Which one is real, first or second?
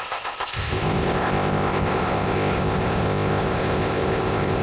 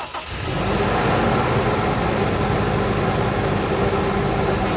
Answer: second